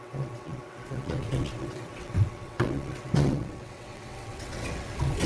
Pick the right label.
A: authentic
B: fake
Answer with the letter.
B